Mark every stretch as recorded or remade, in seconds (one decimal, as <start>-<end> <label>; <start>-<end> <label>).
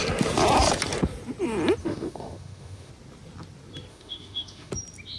0.0-1.8 recorded; 1.8-2.9 remade; 2.9-3.9 recorded; 3.9-4.7 remade; 4.7-5.2 recorded